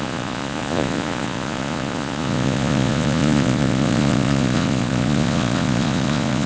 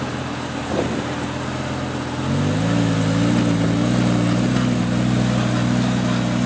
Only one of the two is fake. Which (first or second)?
first